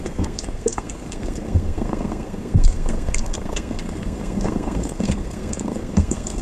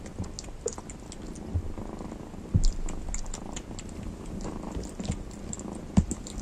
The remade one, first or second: first